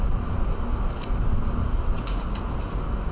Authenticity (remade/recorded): recorded